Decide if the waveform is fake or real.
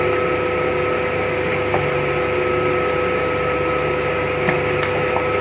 real